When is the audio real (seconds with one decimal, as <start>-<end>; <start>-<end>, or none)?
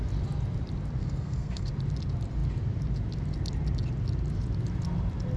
0.0-1.0; 1.7-5.4